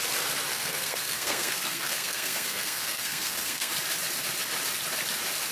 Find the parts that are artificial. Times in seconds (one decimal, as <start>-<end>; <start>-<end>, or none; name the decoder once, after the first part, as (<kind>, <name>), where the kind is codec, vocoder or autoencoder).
0.5-3.7 (codec, SNAC)